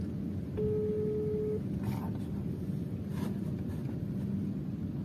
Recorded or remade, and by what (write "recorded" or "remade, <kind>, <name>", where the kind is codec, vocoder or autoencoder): recorded